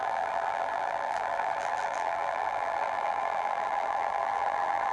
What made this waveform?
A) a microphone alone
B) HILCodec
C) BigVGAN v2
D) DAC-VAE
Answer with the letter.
C